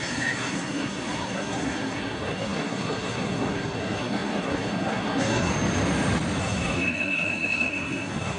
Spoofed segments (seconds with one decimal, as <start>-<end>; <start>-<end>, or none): 0.0-5.5; 6.4-8.4